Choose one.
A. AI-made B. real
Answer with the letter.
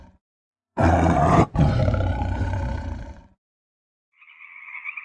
A